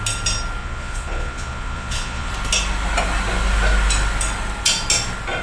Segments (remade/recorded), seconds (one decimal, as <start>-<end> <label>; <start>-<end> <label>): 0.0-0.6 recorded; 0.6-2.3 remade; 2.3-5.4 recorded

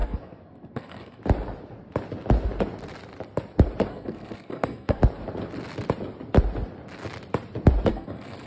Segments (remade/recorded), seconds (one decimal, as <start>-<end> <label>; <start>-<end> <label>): 0.0-1.2 remade; 1.2-3.9 recorded; 3.9-5.0 remade; 5.0-7.9 recorded; 7.9-8.5 remade

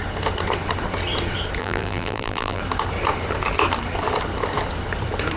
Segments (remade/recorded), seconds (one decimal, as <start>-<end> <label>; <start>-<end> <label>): 0.0-1.6 recorded; 1.6-2.6 remade; 2.6-5.4 recorded